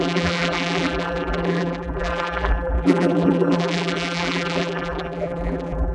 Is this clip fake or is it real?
fake